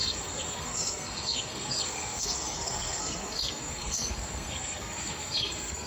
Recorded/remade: remade